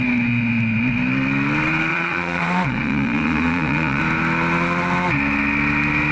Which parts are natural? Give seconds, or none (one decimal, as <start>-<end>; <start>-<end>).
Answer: 0.0-1.9; 4.0-6.1